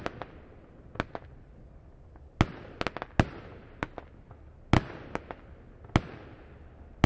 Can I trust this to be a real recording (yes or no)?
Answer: yes